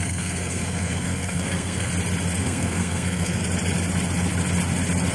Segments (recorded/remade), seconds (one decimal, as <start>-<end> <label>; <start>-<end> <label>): 0.0-1.9 remade; 1.9-2.4 recorded; 2.4-3.4 remade; 3.4-5.1 recorded